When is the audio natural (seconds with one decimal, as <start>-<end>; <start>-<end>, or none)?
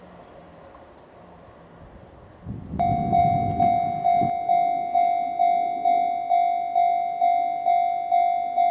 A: 0.0-8.7